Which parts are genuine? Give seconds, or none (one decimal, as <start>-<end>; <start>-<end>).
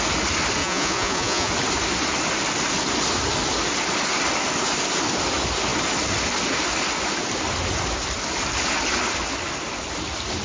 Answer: 0.0-0.6; 1.5-10.4